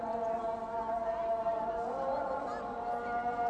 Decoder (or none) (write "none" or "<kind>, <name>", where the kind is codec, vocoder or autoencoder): none